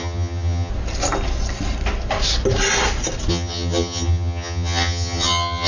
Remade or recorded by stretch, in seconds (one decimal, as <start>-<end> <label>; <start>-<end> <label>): 0.0-0.7 remade; 0.7-3.3 recorded; 3.3-5.7 remade